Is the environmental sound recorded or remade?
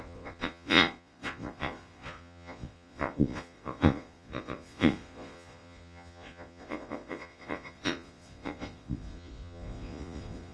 remade